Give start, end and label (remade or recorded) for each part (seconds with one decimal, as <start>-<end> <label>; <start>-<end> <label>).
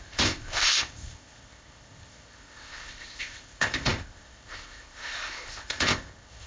0.0-6.5 remade